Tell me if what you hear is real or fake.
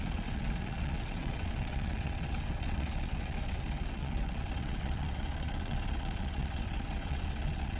fake